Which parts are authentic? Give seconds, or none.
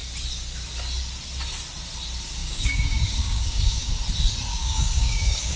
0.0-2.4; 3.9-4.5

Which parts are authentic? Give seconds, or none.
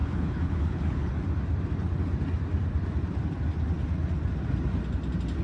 1.1-5.4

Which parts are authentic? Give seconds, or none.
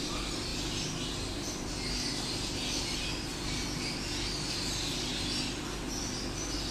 0.0-6.7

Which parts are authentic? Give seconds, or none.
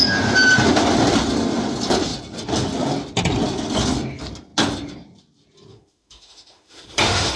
0.0-5.7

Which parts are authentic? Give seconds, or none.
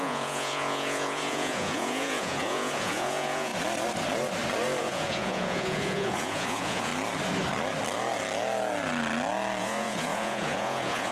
3.5-4.8; 6.9-9.6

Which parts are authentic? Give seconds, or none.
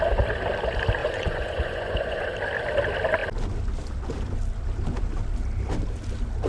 0.0-1.0; 2.3-6.5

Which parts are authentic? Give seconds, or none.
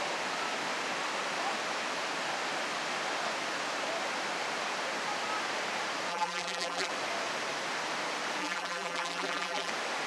0.0-6.1; 6.9-8.4; 9.7-10.1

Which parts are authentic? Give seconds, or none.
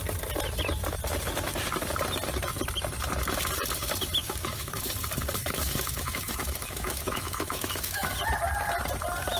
0.0-4.2; 4.9-5.4; 8.1-9.4